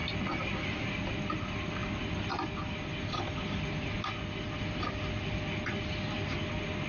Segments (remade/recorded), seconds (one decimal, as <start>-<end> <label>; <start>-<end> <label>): 0.0-6.9 recorded